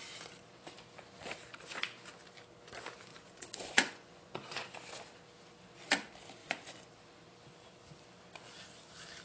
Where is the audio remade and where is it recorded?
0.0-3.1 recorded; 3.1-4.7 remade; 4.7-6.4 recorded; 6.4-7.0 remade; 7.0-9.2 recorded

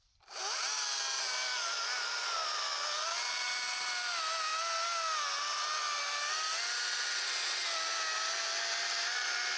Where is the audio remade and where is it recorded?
0.0-9.6 recorded